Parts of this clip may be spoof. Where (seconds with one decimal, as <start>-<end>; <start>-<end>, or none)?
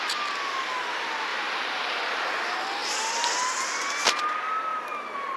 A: 1.3-2.0; 4.7-5.4